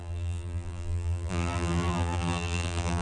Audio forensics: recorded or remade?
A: remade